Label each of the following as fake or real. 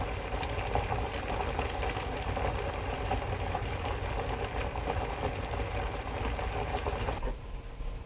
real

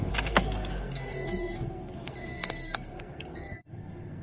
fake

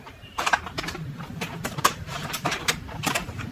fake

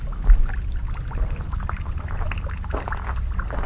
real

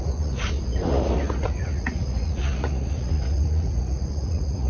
fake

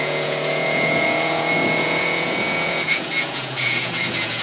fake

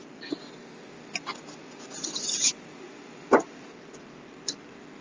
real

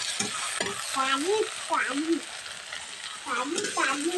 real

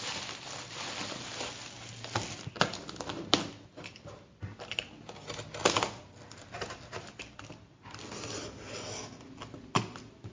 real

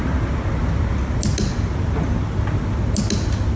real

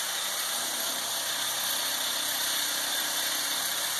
fake